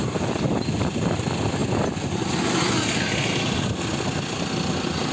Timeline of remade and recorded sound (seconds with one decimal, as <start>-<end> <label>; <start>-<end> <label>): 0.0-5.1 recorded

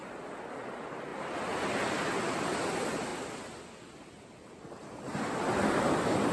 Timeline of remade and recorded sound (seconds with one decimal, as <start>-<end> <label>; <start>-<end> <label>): 0.0-3.1 recorded; 3.1-3.6 remade; 3.6-6.3 recorded

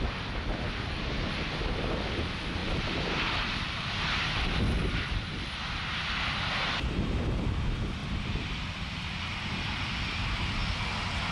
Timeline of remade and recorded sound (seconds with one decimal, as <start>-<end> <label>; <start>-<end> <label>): 0.0-2.6 recorded; 2.6-3.3 remade; 3.3-8.0 recorded; 8.0-10.0 remade; 10.0-11.3 recorded